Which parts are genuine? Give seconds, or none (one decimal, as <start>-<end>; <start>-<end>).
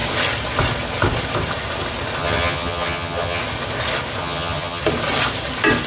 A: 0.0-2.2; 3.4-4.2; 4.8-5.9